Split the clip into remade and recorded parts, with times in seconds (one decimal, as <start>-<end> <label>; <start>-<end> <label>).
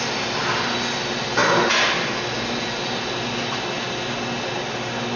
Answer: 0.0-5.2 recorded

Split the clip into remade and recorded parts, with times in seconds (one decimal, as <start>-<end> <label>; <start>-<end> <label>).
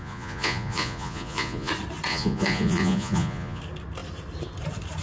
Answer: 0.0-1.7 remade; 1.7-2.1 recorded; 2.1-3.6 remade; 3.6-5.0 recorded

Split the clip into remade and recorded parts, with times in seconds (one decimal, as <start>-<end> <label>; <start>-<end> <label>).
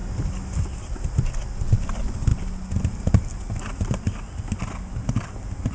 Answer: 0.0-5.7 recorded